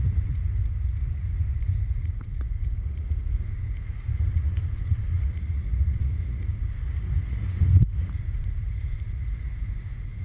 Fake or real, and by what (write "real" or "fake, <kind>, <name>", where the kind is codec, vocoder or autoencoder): fake, vocoder, Vocos